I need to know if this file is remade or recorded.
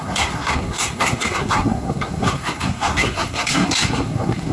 remade